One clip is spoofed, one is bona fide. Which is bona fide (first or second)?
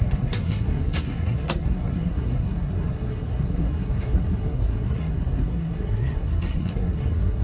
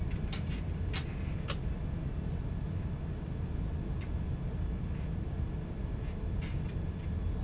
second